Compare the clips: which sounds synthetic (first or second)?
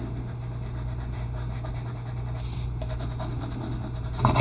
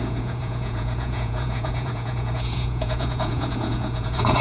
second